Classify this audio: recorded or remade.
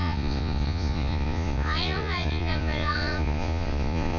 remade